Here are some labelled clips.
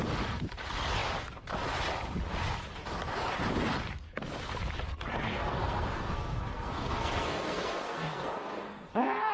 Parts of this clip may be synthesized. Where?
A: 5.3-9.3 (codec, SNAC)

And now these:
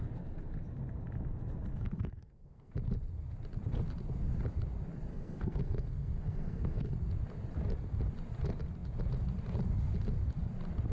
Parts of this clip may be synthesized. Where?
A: 1.7-2.7 (codec, SNAC); 5.1-6.9

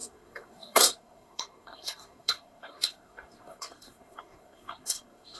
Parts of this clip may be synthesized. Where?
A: 0.0-5.4 (codec, SNAC)

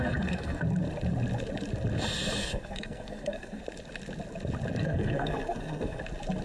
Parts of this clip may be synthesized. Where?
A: 0.0-0.6 (codec, SNAC); 2.4-3.6; 4.8-6.0